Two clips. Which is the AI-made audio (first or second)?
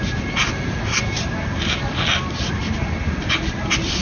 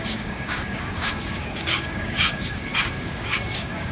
second